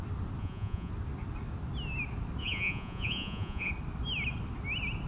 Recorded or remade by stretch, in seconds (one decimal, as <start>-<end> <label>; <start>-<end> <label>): 0.0-0.4 recorded; 0.4-0.9 remade; 0.9-2.4 recorded; 2.4-3.7 remade; 3.7-5.1 recorded